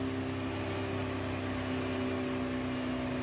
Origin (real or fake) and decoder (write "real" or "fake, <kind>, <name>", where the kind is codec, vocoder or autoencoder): real